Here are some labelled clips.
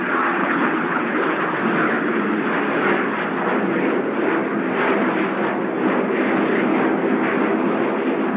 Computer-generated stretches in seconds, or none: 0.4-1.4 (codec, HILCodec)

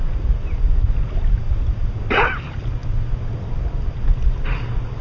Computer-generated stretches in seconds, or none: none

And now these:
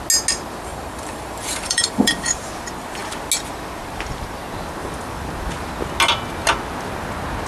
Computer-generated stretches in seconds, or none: 0.7-2.5 (vocoder, BigVGAN v2)

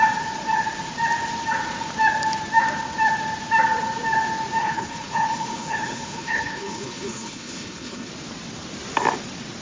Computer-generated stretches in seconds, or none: 4.6-8.1 (codec, HILCodec)

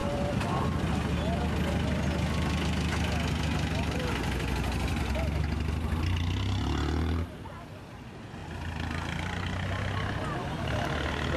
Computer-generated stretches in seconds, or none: none

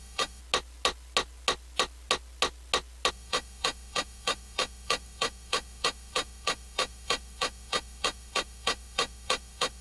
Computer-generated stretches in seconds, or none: 0.0-0.4 (autoencoder, DAC-VAE); 3.1-9.8

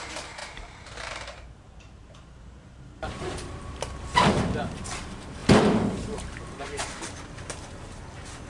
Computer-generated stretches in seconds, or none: 0.0-8.5 (vocoder, BigVGAN v2)

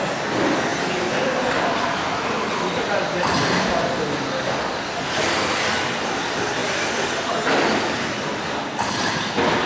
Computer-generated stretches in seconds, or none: none